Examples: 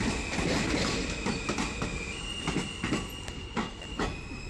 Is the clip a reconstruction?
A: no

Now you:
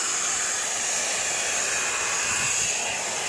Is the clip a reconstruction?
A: no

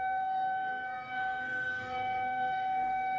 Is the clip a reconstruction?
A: yes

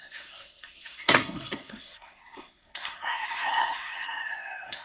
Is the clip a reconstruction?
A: yes